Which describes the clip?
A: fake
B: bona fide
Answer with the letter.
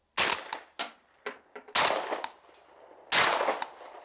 B